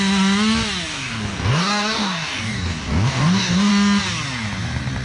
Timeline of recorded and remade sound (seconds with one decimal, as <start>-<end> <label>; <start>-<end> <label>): 0.0-0.9 recorded; 0.9-3.7 remade; 3.7-5.0 recorded